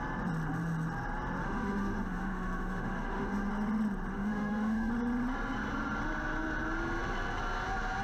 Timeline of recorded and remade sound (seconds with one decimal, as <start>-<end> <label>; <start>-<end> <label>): 0.0-1.4 recorded; 1.4-3.5 remade; 3.5-4.1 recorded; 4.1-4.9 remade; 4.9-8.0 recorded